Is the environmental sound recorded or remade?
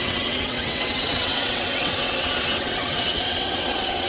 remade